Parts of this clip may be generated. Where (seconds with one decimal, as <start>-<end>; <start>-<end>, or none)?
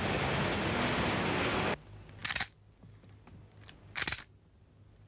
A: none